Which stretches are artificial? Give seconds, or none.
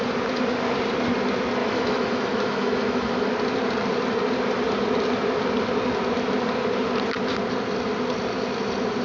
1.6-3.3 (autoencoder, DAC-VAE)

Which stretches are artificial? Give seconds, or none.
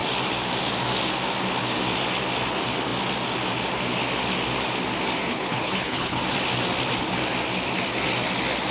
5.2-6.2 (codec, HILCodec)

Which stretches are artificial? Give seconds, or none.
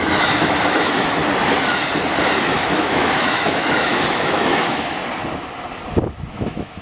0.0-1.2 (autoencoder, DAC-VAE); 2.5-5.0; 6.3-6.8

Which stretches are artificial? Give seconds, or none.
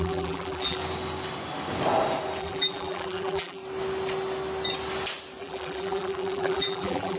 0.0-0.8 (vocoder, BigVGAN v2); 2.4-3.6; 5.4-7.2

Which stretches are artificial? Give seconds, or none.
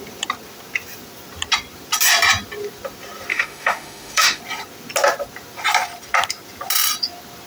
3.3-4.4 (autoencoder, DAC-VAE)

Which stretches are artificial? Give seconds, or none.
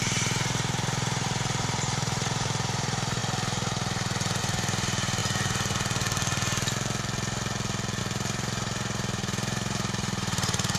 0.0-3.2 (vocoder, BigVGAN v2); 4.4-5.2; 8.0-10.8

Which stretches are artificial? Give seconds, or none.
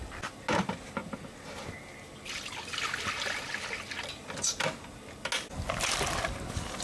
none